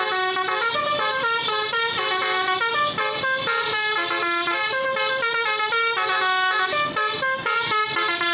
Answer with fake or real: real